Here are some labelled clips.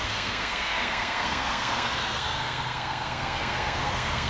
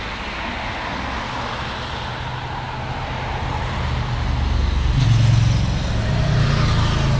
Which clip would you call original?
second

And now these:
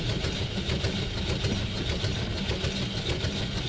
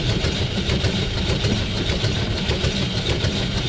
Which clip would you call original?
first